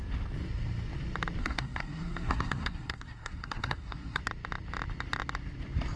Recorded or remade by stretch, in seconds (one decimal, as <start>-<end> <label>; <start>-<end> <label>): 0.0-1.4 recorded; 1.4-4.2 remade; 4.2-6.0 recorded